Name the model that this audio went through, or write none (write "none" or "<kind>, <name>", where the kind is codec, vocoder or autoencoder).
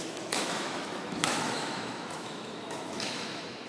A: autoencoder, DAC-VAE